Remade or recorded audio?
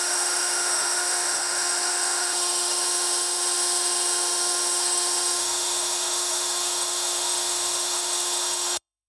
remade